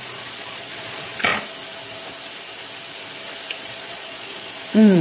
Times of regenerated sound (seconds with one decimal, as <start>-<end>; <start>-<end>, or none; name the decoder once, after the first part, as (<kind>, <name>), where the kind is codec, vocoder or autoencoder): 0.0-1.3 (vocoder, Vocos); 3.6-5.0